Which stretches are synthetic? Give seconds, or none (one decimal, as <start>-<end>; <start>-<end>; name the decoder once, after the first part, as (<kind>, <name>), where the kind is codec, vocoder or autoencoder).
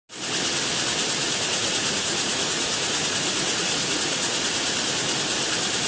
1.2-4.7 (vocoder, Vocos)